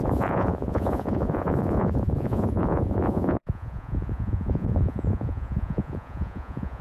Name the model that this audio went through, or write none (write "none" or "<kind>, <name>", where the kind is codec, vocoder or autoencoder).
vocoder, Vocos